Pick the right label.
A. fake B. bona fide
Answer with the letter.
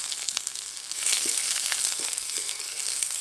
A